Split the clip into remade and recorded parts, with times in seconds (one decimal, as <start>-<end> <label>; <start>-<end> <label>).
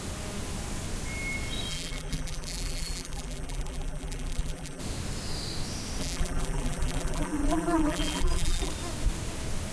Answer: 0.0-1.7 recorded; 1.7-4.8 remade; 4.8-6.0 recorded; 6.0-8.7 remade; 8.7-9.7 recorded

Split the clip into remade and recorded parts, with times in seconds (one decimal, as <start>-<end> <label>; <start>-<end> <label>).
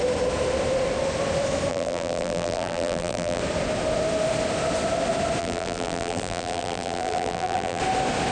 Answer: 0.0-1.7 recorded; 1.7-3.4 remade; 3.4-5.4 recorded; 5.4-7.8 remade; 7.8-8.3 recorded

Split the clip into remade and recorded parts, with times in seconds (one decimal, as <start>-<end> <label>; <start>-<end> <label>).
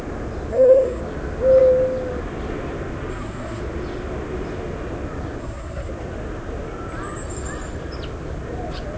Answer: 0.0-0.5 recorded; 0.5-1.0 remade; 1.0-3.1 recorded; 3.1-3.6 remade; 3.6-5.4 recorded; 5.4-5.9 remade; 5.9-9.0 recorded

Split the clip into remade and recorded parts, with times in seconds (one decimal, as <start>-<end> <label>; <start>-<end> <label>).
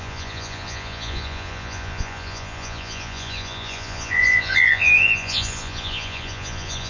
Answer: 0.0-6.9 remade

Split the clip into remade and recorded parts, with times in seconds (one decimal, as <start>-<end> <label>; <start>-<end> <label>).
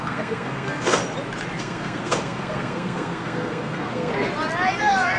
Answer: 0.0-1.0 remade; 1.0-1.6 recorded; 1.6-4.1 remade; 4.1-4.8 recorded; 4.8-5.2 remade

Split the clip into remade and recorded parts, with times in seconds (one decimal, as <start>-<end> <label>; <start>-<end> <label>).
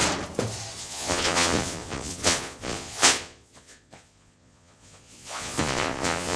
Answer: 0.0-0.8 recorded; 0.8-6.4 remade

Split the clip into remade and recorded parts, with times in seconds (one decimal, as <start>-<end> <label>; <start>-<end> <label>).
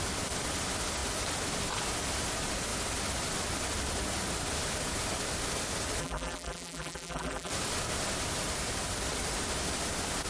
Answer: 0.0-6.0 recorded; 6.0-7.5 remade; 7.5-10.3 recorded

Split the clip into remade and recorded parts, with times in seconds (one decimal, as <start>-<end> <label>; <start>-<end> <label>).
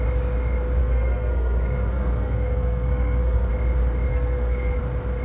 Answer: 0.0-0.8 recorded; 0.8-3.5 remade; 3.5-4.1 recorded; 4.1-4.8 remade; 4.8-5.2 recorded